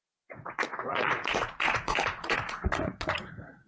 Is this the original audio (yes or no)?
no